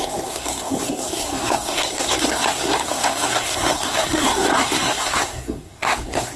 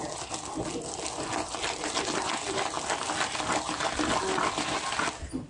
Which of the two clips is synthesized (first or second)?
first